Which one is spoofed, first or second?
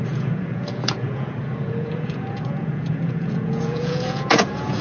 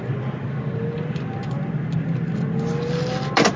first